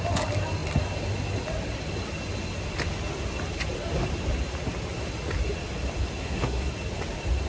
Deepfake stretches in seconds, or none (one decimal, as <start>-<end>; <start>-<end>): 6.2-6.7